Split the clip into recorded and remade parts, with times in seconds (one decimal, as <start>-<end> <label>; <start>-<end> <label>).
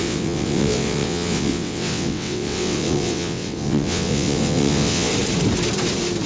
0.0-5.1 remade; 5.1-6.3 recorded